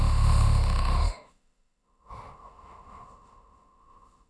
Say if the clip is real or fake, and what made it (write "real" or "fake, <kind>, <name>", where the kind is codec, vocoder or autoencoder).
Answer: fake, autoencoder, DAC-VAE